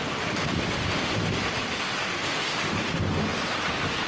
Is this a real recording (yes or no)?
yes